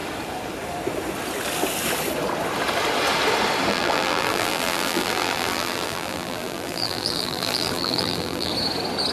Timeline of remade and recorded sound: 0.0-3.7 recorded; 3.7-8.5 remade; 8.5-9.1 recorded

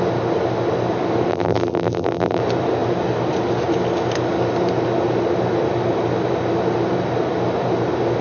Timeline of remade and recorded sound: 0.0-1.3 recorded; 1.3-2.4 remade; 2.4-8.2 recorded